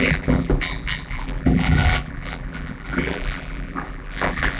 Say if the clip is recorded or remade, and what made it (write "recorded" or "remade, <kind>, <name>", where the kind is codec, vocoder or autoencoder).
remade, vocoder, BigVGAN v2